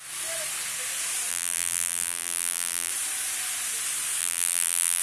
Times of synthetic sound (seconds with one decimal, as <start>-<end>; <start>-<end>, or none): 1.3-2.9; 4.2-5.0